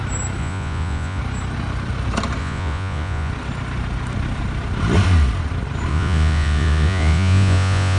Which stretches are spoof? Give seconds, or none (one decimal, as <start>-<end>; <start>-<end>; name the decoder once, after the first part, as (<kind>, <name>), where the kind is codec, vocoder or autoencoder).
0.4-1.2 (vocoder, Vocos); 2.4-3.3; 5.9-8.0